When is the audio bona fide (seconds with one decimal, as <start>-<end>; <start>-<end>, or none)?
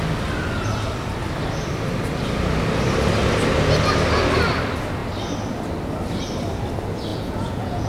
0.0-7.1